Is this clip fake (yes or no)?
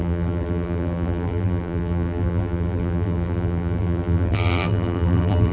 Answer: yes